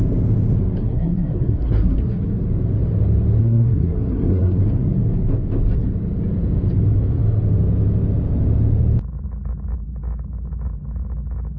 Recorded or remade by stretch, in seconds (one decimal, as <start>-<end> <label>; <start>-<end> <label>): 0.0-0.8 recorded; 0.8-2.2 remade; 2.2-3.4 recorded; 3.4-4.6 remade; 4.6-11.6 recorded